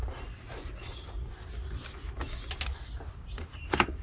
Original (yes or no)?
yes